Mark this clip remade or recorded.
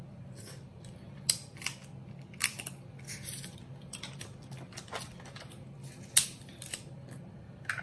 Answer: recorded